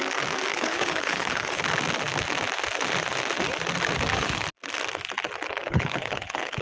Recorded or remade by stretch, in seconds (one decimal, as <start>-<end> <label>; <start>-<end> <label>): 0.0-0.5 recorded; 0.5-1.6 remade; 1.6-5.6 recorded; 5.6-6.6 remade